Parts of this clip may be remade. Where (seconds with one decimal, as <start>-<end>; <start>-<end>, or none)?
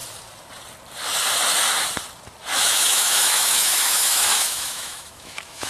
2.5-5.7